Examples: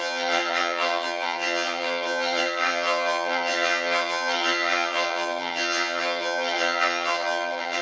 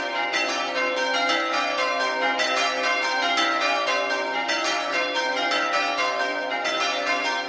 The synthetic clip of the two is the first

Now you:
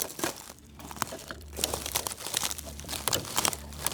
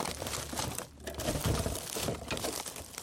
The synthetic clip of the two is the first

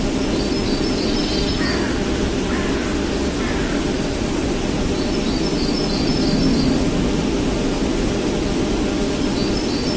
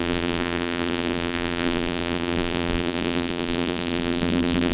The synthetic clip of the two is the second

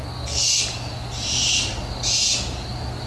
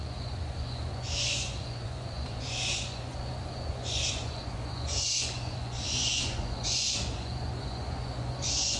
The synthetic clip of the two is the second